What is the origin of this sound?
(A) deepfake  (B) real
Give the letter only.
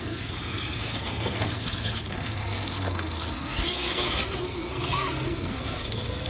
A